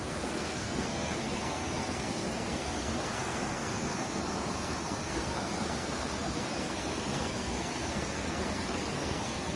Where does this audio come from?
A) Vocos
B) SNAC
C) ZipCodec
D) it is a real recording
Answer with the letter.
B